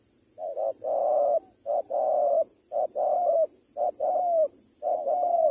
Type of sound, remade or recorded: recorded